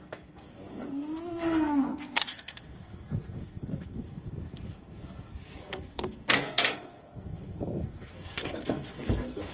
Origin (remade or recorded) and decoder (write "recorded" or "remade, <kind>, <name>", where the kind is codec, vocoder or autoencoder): remade, codec, SNAC